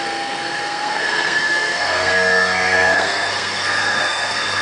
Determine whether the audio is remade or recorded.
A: remade